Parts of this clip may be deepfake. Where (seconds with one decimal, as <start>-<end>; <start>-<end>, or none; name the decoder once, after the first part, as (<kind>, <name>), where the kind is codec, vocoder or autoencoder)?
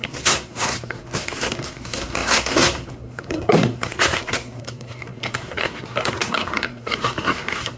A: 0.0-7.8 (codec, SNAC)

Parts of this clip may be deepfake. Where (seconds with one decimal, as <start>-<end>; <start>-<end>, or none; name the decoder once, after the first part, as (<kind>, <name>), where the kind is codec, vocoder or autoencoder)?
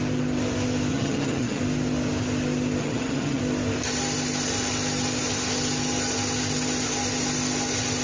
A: 0.9-1.6 (vocoder, HiFi-GAN); 2.8-3.4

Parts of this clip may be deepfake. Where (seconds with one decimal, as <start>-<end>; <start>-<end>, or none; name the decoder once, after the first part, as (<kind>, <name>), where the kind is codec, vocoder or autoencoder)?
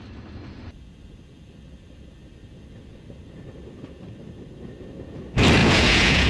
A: 5.6-6.3 (vocoder, Vocos)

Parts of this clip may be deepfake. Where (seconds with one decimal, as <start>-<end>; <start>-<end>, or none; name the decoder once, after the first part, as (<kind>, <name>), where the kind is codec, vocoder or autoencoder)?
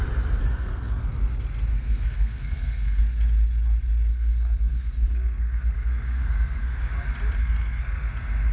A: 0.4-1.1 (codec, SNAC); 1.7-3.0; 4.1-6.9; 7.4-8.1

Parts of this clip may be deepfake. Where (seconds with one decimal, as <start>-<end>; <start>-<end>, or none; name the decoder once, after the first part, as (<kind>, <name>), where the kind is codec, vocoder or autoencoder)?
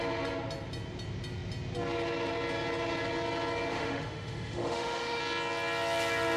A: 3.7-5.2 (autoencoder, DAC-VAE)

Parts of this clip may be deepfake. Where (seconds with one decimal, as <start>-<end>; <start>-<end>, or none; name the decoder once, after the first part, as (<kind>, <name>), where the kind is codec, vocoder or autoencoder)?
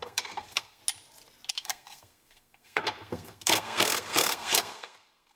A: 0.0-0.8 (codec, SNAC); 1.5-5.4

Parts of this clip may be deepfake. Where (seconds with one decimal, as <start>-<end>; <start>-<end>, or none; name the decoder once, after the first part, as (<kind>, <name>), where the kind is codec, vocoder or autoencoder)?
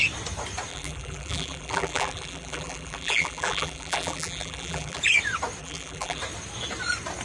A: 0.7-5.0 (vocoder, BigVGAN v2); 5.6-6.2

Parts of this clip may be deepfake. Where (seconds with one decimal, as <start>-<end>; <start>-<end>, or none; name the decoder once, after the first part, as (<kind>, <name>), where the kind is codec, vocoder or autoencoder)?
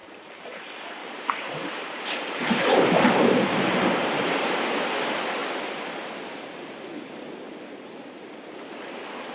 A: 0.0-0.6 (vocoder, BigVGAN v2); 1.0-4.7